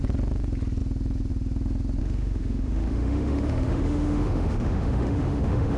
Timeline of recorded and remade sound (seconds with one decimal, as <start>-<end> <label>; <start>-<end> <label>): 0.0-2.0 recorded; 2.0-5.8 remade

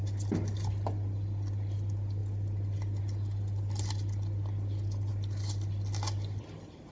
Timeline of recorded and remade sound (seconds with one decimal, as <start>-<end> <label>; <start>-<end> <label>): 0.0-6.9 recorded

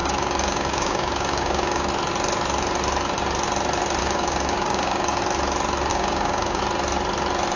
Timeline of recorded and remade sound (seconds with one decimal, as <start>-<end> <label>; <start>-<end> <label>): 0.0-1.9 remade; 1.9-4.0 recorded; 4.0-5.2 remade; 5.2-5.9 recorded; 5.9-6.6 remade; 6.6-7.6 recorded

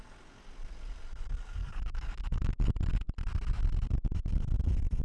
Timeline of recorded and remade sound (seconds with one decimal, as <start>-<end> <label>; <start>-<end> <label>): 0.0-1.6 recorded; 1.6-2.5 remade; 2.5-5.0 recorded

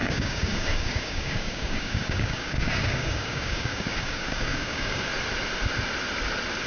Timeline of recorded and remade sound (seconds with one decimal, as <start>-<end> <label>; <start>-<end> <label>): 0.0-5.1 remade; 5.1-6.7 recorded

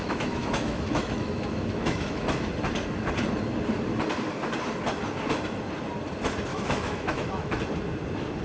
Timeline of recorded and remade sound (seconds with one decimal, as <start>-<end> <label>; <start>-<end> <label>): 0.0-2.5 remade; 2.5-6.5 recorded; 6.5-7.6 remade; 7.6-8.4 recorded